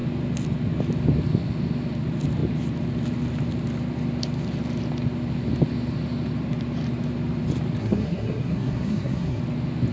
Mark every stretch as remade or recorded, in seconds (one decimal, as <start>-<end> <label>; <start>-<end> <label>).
0.0-7.8 recorded; 7.8-9.4 remade; 9.4-9.9 recorded